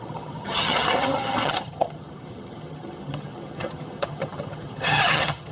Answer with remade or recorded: remade